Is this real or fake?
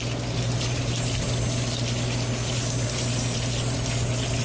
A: real